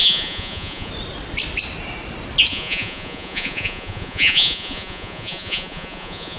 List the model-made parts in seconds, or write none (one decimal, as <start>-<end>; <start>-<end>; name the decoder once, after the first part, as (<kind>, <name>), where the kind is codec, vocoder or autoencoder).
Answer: 0.0-0.9 (vocoder, Vocos); 2.5-6.4

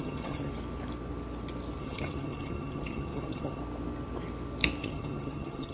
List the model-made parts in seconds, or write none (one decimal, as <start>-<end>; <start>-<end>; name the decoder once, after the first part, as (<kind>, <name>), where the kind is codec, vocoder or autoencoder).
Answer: 0.0-0.5 (vocoder, HiFi-GAN); 1.8-3.6; 4.8-5.7

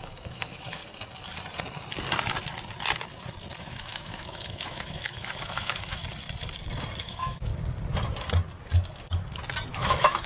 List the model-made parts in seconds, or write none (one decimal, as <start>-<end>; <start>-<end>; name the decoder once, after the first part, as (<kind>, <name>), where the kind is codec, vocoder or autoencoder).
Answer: 0.0-0.8 (autoencoder, DAC-VAE); 3.6-6.0; 7.0-7.5; 9.7-10.3

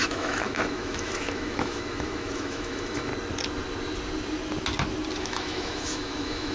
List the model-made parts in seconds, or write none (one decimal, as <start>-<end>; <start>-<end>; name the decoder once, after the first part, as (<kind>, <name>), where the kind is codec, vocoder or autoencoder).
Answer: 0.0-3.1 (autoencoder, DAC-VAE); 5.2-6.5

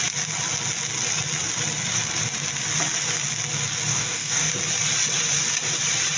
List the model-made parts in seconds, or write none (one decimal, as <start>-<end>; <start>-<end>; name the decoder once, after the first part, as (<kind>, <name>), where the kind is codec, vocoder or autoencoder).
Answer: 3.9-4.5 (codec, DAC)